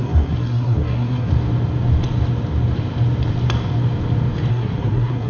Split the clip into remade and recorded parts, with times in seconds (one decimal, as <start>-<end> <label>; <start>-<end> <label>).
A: 0.0-1.3 remade; 1.3-4.5 recorded; 4.5-5.3 remade